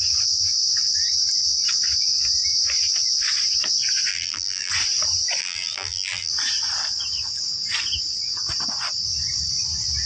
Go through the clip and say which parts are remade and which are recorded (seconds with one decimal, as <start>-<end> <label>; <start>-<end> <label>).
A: 0.0-4.1 recorded; 4.1-4.7 remade; 4.7-5.4 recorded; 5.4-6.3 remade; 6.3-10.1 recorded